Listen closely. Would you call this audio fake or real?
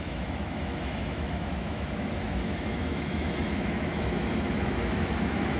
fake